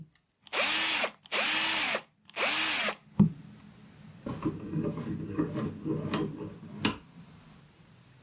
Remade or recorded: recorded